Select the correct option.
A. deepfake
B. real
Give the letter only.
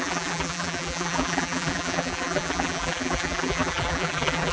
A